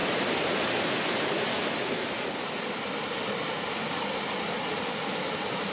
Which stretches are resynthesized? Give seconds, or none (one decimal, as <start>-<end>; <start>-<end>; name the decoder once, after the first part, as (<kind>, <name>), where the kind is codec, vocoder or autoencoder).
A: none